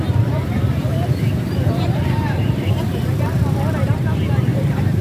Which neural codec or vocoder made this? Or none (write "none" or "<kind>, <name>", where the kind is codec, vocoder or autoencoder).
vocoder, BigVGAN v2